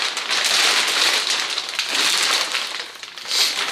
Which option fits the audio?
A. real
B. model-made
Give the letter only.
A